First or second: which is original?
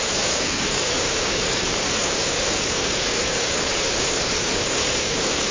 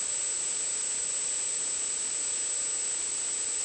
second